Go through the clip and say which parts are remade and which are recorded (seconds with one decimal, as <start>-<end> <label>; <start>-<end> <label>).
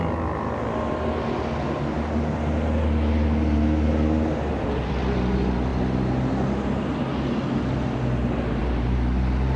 0.0-9.6 recorded